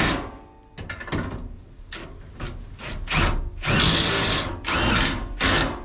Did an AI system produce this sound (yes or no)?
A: no